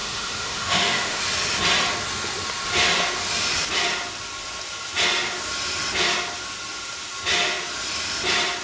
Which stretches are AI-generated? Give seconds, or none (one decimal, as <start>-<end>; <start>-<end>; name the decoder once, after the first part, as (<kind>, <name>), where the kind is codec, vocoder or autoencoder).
0.0-1.2 (autoencoder, DAC-VAE)